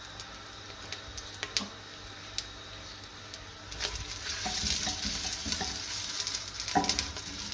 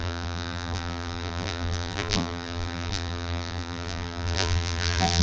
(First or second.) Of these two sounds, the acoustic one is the first